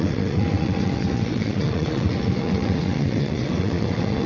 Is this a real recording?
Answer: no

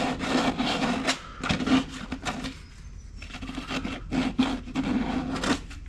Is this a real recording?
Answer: yes